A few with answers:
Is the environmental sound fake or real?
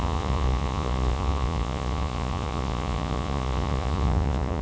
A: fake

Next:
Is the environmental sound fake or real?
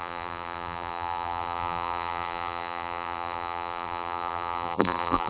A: fake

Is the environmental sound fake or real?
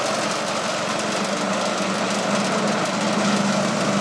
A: real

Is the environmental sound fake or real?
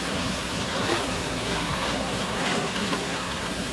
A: fake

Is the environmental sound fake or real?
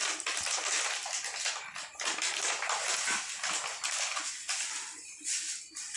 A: real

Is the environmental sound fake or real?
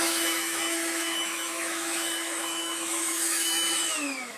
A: fake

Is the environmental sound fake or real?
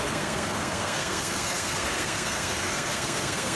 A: fake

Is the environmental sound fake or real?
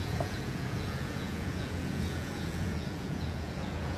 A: fake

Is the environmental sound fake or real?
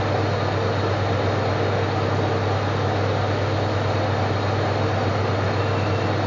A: real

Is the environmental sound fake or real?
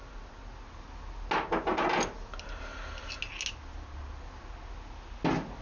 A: real